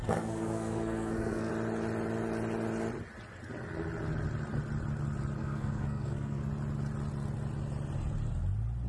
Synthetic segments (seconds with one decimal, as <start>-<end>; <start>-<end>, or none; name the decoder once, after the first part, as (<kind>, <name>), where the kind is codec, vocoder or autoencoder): 0.0-1.5 (codec, SNAC); 5.4-6.5